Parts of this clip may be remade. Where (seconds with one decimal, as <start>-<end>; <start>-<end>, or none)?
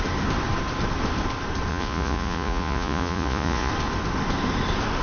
1.7-3.7